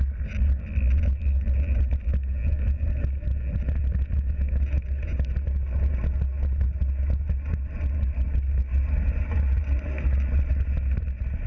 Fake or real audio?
real